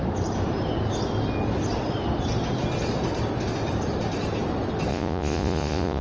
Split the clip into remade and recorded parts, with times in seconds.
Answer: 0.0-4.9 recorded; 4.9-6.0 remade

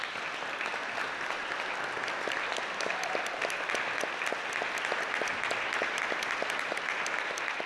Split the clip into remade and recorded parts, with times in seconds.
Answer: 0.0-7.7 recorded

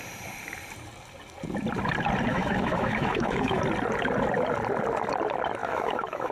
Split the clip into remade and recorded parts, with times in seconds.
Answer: 0.0-2.3 recorded; 2.3-3.6 remade; 3.6-5.6 recorded; 5.6-6.3 remade

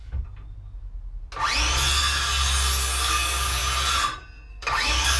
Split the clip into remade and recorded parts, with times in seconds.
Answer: 0.0-3.1 recorded; 3.1-3.6 remade; 3.6-4.5 recorded; 4.5-5.2 remade